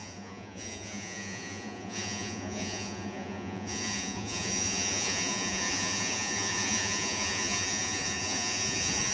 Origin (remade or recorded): remade